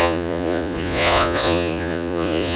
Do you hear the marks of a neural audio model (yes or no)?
yes